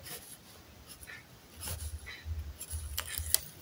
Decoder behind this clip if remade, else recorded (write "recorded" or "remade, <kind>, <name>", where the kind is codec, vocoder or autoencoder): recorded